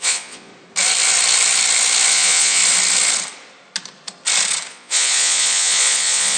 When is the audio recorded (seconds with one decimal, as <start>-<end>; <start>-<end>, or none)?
0.5-2.1; 2.6-4.7